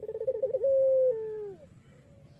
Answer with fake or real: real